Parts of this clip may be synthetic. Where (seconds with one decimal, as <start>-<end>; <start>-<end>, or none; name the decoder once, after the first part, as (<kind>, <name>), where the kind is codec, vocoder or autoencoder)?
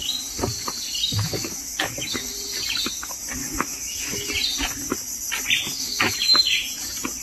1.0-2.3 (autoencoder, DAC-VAE); 3.4-4.3; 5.7-6.7